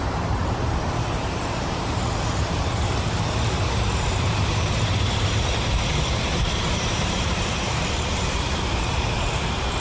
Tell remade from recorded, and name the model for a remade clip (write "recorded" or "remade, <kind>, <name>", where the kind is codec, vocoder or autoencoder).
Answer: remade, vocoder, BigVGAN v2